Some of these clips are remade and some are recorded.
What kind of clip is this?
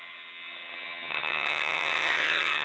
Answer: remade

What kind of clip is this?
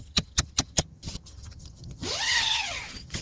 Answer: remade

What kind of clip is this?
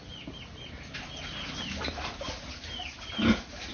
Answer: recorded